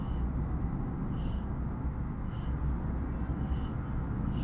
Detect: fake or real real